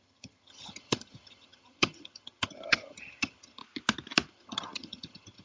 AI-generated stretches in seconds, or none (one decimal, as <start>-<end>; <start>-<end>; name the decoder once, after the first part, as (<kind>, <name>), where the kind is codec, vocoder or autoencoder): 0.0-3.6 (vocoder, HiFi-GAN); 4.3-5.4